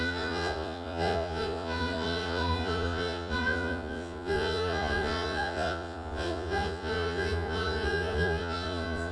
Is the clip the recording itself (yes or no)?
no